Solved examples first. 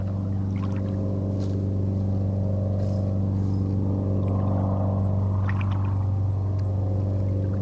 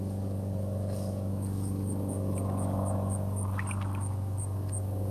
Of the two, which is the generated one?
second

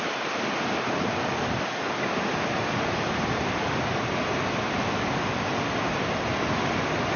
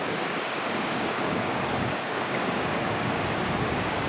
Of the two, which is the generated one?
second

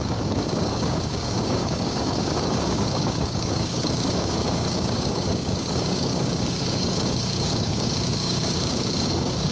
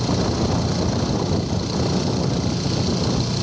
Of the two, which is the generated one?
first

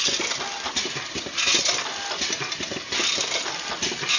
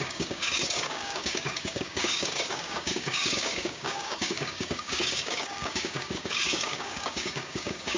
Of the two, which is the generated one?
second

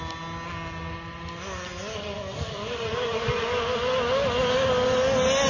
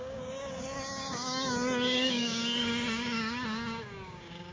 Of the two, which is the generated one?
second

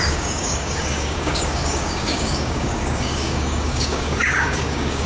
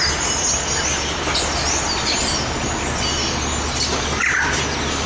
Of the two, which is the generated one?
first